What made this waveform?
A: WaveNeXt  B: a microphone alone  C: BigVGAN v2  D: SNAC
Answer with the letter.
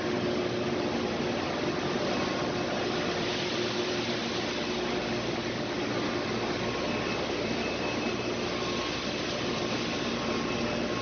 B